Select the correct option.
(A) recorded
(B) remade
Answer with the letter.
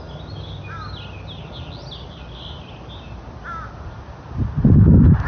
A